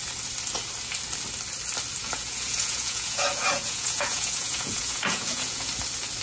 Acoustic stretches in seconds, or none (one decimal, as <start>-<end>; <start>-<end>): 0.0-2.0; 5.7-6.2